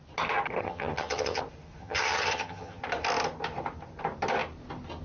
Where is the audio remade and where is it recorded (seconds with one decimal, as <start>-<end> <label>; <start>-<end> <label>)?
0.0-0.6 recorded; 0.6-1.4 remade; 1.4-1.8 recorded; 1.8-2.8 remade; 2.8-5.0 recorded